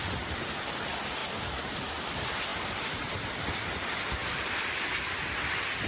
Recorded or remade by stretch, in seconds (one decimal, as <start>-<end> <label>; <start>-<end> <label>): 0.0-1.2 remade; 1.2-2.0 recorded; 2.0-5.9 remade